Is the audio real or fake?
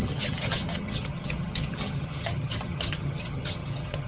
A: fake